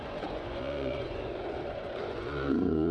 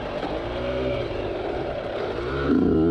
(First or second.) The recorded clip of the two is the second